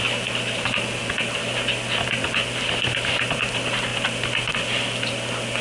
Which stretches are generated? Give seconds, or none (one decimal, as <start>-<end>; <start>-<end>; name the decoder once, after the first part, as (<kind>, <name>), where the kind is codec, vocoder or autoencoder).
none